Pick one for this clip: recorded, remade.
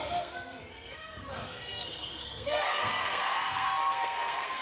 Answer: remade